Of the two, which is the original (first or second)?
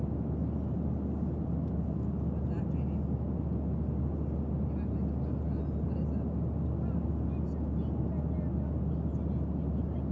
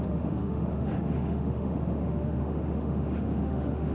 first